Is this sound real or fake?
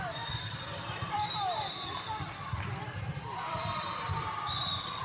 fake